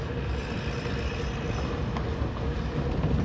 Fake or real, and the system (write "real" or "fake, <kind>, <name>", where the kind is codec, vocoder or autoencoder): real